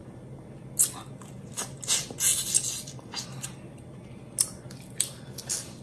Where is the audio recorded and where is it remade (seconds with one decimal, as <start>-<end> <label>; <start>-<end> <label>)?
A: 0.0-5.8 recorded